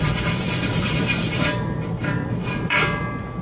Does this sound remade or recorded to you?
remade